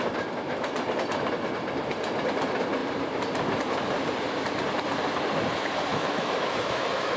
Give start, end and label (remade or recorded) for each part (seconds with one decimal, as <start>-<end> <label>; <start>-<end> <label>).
0.0-5.9 recorded; 5.9-7.2 remade

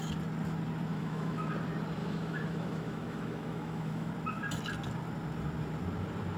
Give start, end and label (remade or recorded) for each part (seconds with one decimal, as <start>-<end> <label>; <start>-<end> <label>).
0.0-0.9 recorded; 0.9-1.5 remade; 1.5-2.0 recorded; 2.0-4.1 remade; 4.1-6.4 recorded

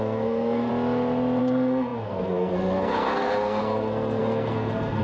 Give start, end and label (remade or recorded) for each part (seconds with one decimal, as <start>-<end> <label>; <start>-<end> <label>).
0.0-0.7 remade; 0.7-1.4 recorded; 1.4-5.0 remade

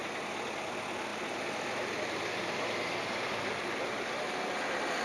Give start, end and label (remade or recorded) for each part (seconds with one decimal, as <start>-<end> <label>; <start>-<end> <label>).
0.0-5.0 recorded

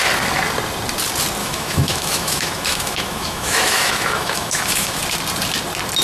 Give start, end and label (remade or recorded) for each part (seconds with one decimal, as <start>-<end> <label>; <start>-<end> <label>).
0.0-1.4 recorded; 1.4-5.0 remade; 5.0-6.0 recorded